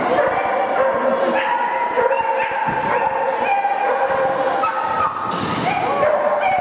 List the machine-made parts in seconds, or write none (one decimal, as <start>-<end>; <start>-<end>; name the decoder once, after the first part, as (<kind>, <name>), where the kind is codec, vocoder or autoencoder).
none